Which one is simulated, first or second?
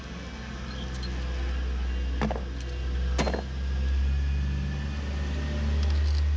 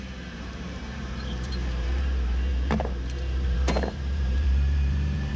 second